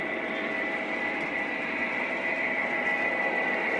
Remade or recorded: remade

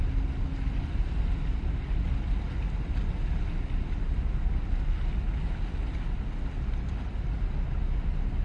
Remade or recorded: recorded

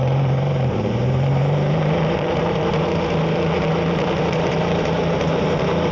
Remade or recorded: remade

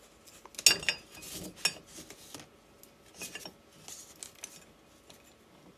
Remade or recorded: recorded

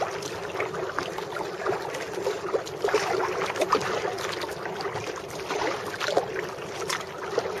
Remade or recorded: recorded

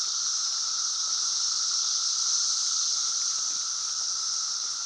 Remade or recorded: recorded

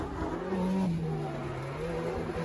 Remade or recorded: recorded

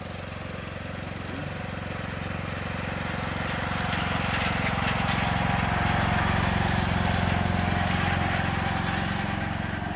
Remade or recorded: recorded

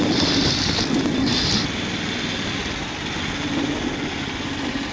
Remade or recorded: recorded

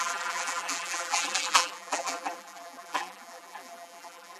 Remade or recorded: remade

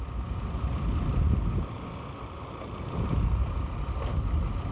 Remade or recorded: recorded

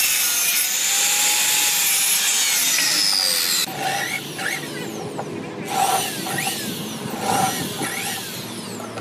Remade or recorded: recorded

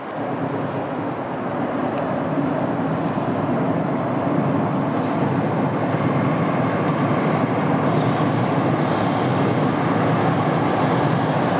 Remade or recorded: recorded